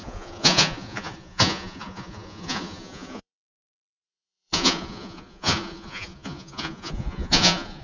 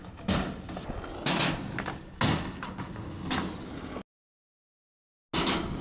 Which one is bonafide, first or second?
second